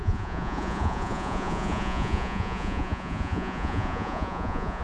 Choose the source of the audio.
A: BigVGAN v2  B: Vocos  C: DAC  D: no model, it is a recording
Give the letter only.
B